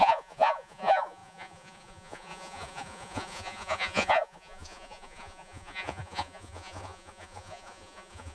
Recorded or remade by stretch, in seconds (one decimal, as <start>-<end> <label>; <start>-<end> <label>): 0.0-8.3 remade